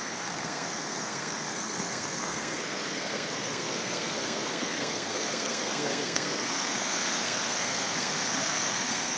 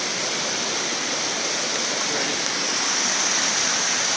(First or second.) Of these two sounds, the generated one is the first